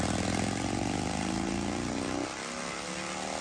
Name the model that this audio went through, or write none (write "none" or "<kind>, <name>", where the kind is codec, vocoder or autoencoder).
none